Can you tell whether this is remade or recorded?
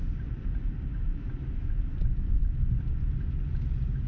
recorded